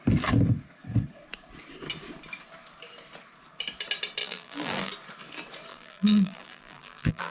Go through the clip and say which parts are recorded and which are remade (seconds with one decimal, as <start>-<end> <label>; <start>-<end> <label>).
0.0-4.2 recorded; 4.2-4.9 remade; 4.9-5.7 recorded; 5.7-7.3 remade